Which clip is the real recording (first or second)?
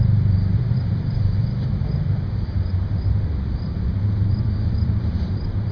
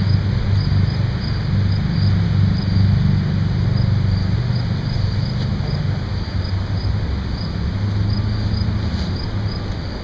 second